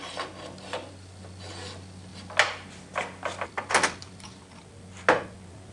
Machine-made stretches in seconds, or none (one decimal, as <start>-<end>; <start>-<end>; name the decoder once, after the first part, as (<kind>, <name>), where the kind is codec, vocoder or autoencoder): none